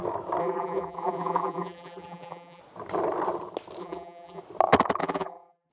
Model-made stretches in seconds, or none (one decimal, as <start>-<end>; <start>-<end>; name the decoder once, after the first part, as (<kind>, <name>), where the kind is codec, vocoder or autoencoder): 0.4-2.6 (vocoder, BigVGAN v2); 3.8-4.4; 5.0-5.7